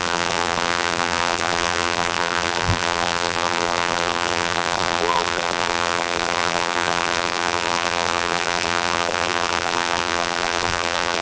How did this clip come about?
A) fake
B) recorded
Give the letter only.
A